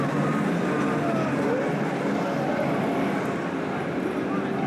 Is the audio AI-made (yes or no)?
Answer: no